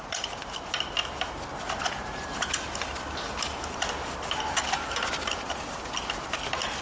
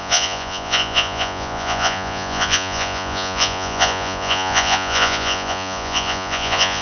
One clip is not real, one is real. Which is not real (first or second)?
second